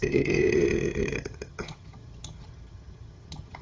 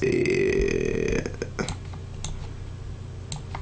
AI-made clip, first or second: first